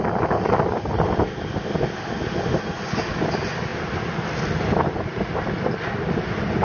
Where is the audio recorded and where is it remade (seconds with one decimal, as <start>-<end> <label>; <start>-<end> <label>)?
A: 0.0-6.6 recorded